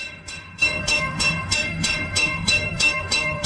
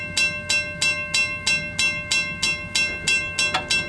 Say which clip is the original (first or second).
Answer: second